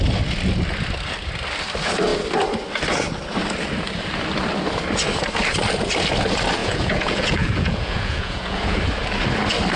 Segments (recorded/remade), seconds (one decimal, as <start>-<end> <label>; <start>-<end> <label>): 0.0-6.6 recorded; 6.6-8.8 remade; 8.8-9.8 recorded